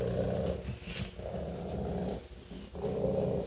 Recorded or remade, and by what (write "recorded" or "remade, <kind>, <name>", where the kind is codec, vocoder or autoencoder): recorded